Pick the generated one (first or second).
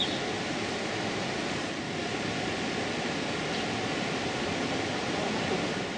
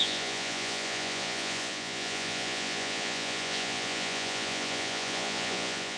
second